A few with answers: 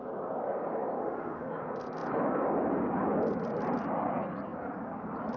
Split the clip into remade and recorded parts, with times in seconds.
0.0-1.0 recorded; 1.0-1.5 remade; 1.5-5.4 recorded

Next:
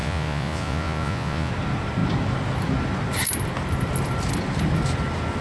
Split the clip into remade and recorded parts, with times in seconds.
0.0-1.5 remade; 1.5-5.4 recorded

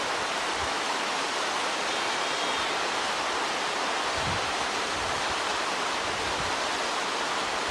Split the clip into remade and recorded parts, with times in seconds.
0.0-0.6 recorded; 0.6-1.1 remade; 1.1-7.7 recorded

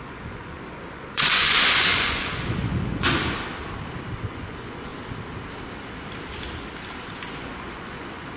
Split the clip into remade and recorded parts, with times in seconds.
0.0-3.2 remade; 3.2-4.3 recorded; 4.3-4.9 remade; 4.9-7.0 recorded; 7.0-8.4 remade